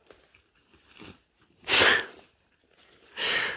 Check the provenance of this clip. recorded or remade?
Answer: remade